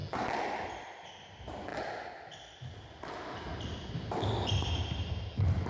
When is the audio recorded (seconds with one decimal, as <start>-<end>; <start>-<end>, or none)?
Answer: 0.0-5.7